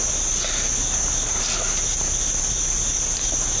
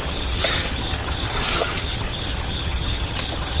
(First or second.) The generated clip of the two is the second